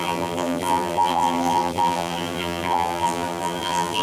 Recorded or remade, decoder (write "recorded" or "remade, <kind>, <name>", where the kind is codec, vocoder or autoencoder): remade, vocoder, BigVGAN v2